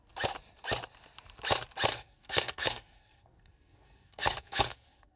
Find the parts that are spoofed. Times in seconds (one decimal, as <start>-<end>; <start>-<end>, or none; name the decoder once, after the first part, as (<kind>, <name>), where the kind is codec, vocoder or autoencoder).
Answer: 1.9-5.2 (codec, SNAC)